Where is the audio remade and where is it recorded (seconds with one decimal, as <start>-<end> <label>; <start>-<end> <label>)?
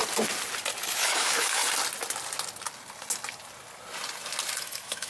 0.0-0.8 recorded; 0.8-1.6 remade; 1.6-4.6 recorded; 4.6-5.1 remade